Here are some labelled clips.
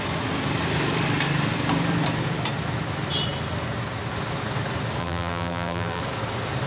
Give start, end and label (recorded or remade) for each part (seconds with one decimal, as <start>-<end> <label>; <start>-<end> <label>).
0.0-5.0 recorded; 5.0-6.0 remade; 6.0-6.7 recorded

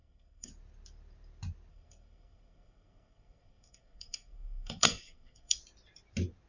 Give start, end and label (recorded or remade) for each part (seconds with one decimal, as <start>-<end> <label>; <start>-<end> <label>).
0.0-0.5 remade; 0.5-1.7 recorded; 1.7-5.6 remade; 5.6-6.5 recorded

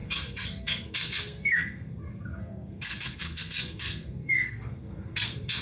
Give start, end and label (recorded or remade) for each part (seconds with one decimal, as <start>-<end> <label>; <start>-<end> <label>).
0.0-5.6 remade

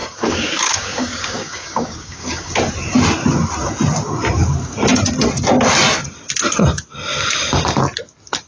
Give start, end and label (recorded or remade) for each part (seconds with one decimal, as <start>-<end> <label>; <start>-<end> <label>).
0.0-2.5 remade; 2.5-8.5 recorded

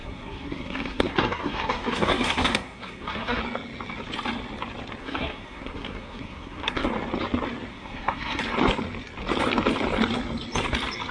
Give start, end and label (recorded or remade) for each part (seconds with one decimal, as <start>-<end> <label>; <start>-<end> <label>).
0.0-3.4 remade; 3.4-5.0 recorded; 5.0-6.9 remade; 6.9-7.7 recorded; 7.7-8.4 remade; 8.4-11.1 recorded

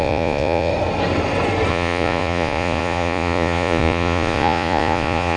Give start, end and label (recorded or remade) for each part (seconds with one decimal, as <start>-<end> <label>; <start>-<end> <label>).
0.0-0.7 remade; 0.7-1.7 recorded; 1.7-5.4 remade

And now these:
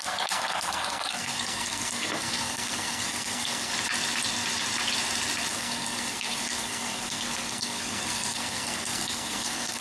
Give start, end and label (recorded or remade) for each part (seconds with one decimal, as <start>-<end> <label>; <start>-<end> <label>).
0.0-3.7 remade; 3.7-5.5 recorded; 5.5-9.8 remade